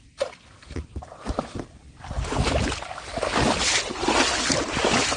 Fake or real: real